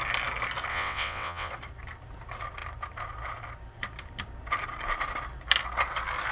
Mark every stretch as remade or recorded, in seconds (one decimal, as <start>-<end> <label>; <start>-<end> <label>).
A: 0.0-0.7 recorded; 0.7-1.5 remade; 1.5-6.3 recorded